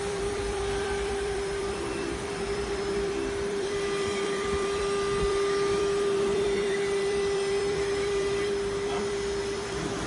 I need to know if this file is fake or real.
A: fake